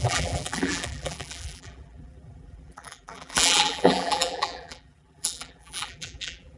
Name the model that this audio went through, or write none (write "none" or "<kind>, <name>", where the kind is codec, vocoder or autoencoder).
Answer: vocoder, BigVGAN v2